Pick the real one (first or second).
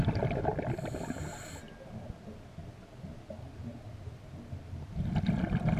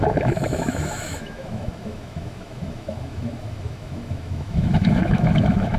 first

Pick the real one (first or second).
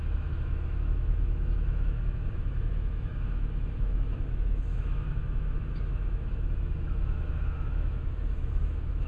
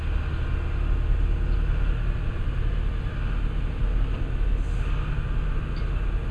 second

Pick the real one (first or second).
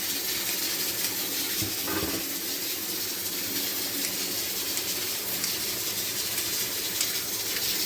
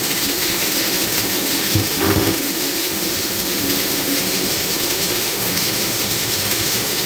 first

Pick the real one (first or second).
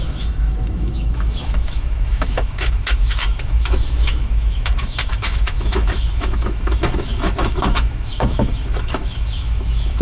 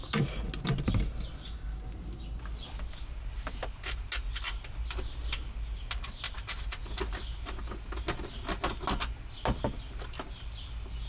second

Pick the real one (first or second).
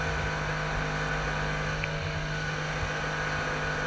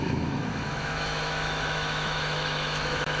first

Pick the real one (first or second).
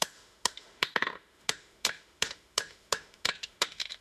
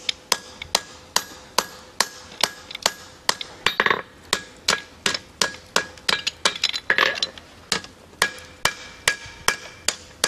second